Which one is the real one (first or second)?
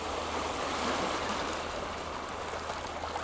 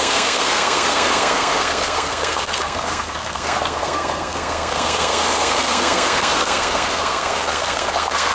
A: first